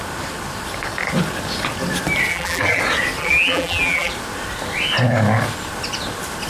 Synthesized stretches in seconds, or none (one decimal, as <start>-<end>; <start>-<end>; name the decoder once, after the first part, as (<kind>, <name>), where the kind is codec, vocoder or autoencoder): 2.3-2.8 (vocoder, BigVGAN v2); 3.2-4.1